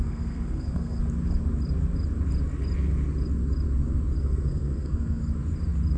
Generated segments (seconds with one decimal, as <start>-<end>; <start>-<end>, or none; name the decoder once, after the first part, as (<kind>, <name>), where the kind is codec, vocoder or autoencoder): 0.0-1.0 (codec, SNAC); 4.2-5.2